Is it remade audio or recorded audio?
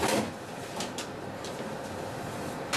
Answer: remade